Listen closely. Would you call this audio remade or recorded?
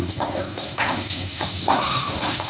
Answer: remade